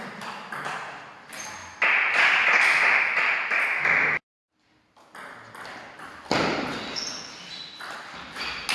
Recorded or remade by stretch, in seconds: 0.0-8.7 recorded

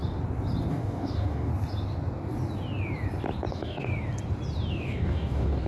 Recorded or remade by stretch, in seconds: 0.0-0.7 recorded; 0.7-1.5 remade; 1.5-3.5 recorded; 3.5-3.9 remade; 3.9-4.7 recorded; 4.7-5.7 remade

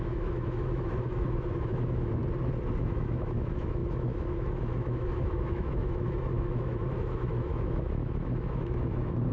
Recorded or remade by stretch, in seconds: 0.0-2.2 remade; 2.2-2.8 recorded; 2.8-9.3 remade

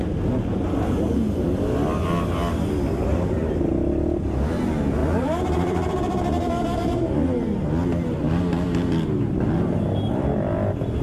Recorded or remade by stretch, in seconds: 0.0-5.0 recorded; 5.0-6.2 remade; 6.2-11.0 recorded

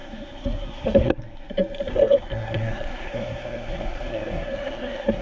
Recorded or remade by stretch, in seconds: 0.0-1.5 remade; 1.5-1.9 recorded; 1.9-5.2 remade

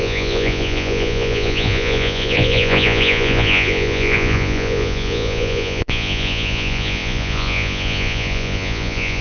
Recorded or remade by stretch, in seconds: 0.0-9.2 remade